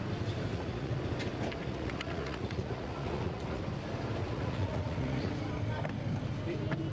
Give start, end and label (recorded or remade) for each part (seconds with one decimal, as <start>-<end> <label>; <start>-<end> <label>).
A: 0.0-0.5 recorded; 0.5-1.0 remade; 1.0-1.6 recorded; 1.6-3.6 remade; 3.6-4.2 recorded; 4.2-5.3 remade; 5.3-6.9 recorded